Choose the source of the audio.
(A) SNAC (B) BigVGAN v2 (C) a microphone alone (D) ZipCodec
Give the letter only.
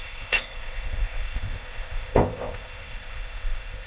D